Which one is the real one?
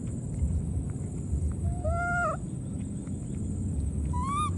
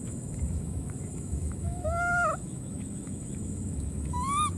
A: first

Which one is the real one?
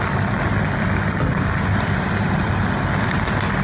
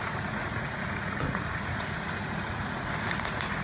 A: first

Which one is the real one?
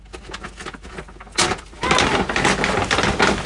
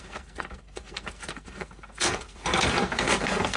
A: first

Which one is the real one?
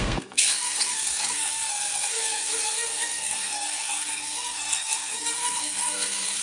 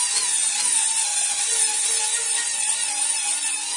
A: second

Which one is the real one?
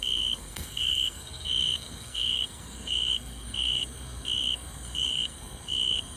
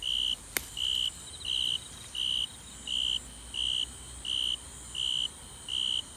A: second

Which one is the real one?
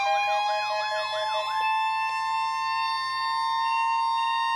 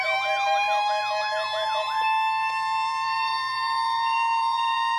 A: first